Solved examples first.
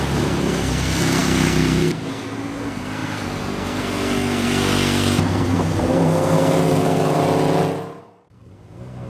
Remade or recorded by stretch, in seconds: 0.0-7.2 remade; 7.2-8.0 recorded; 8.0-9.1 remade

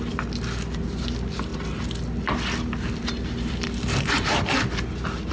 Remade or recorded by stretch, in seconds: 0.0-5.3 recorded

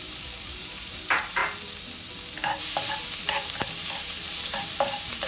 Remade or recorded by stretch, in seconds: 0.0-1.4 remade; 1.4-2.6 recorded; 2.6-5.3 remade

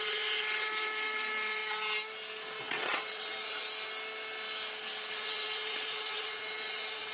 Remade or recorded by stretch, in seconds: 0.0-1.6 remade; 1.6-2.6 recorded; 2.6-3.6 remade; 3.6-5.1 recorded; 5.1-7.1 remade

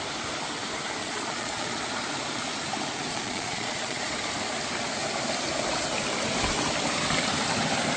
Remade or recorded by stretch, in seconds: 0.0-1.0 recorded; 1.0-1.8 remade; 1.8-3.1 recorded; 3.1-4.0 remade; 4.0-8.0 recorded

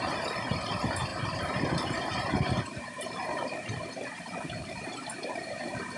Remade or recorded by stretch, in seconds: 0.0-3.4 remade; 3.4-4.3 recorded; 4.3-6.0 remade